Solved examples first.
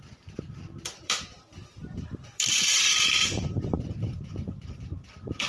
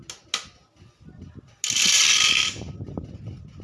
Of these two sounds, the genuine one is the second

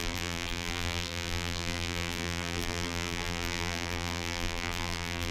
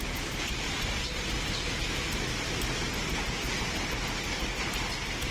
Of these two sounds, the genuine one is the second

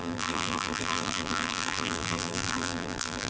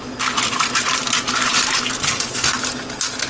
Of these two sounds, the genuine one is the second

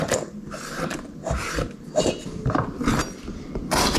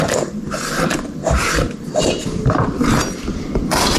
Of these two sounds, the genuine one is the first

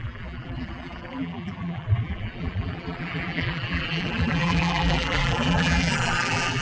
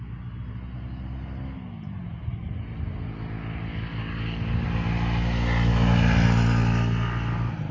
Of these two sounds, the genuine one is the second